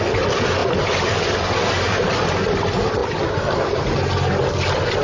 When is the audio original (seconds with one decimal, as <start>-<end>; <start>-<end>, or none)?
0.0-5.0